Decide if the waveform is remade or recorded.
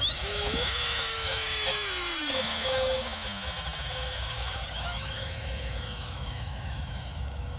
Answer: remade